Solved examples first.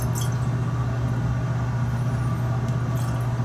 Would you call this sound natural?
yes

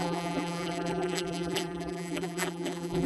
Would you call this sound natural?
no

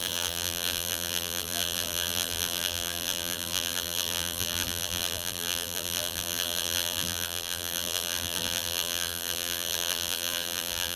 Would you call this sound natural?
no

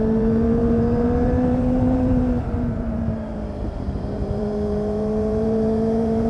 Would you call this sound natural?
no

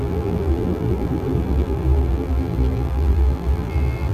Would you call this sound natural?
no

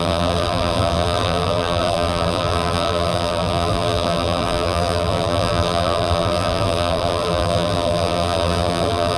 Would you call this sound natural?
no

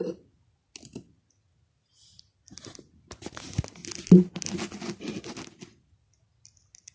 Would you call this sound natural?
yes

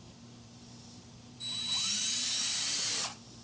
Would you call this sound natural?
no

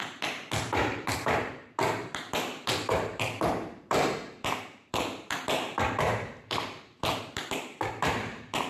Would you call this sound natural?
no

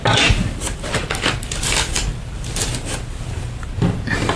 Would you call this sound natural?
yes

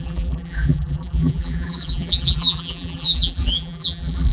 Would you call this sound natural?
no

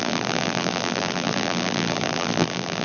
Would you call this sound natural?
no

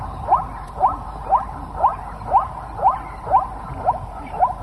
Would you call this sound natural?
no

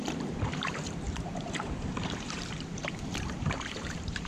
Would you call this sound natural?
no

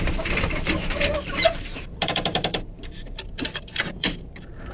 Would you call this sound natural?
no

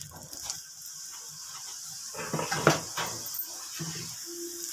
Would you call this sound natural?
yes